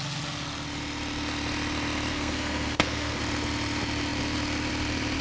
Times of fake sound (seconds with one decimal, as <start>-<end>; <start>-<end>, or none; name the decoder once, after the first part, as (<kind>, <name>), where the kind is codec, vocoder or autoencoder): 2.1-3.2 (codec, SNAC)